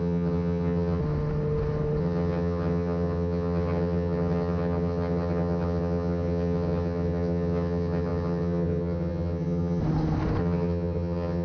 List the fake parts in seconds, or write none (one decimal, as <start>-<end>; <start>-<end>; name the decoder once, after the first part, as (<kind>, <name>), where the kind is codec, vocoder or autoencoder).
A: 0.0-1.0 (vocoder, HiFi-GAN); 2.0-9.8; 10.4-11.4